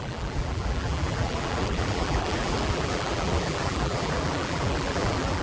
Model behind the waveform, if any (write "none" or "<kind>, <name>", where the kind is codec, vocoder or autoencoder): vocoder, BigVGAN v2